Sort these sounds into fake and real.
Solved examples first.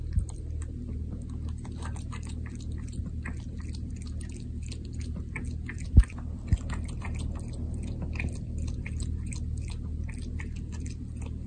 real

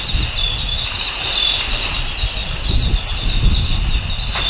real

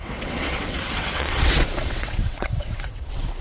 fake